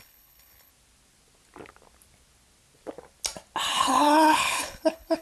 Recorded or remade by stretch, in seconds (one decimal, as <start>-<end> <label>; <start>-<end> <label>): 0.0-0.7 remade; 0.7-3.7 recorded; 3.7-5.2 remade